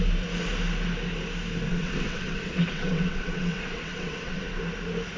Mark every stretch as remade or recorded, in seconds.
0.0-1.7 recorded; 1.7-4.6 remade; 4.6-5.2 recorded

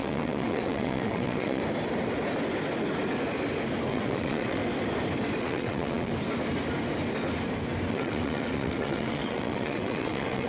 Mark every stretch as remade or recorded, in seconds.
0.0-1.6 remade; 1.6-3.9 recorded; 3.9-4.6 remade; 4.6-5.4 recorded; 5.4-6.1 remade; 6.1-7.9 recorded; 7.9-10.5 remade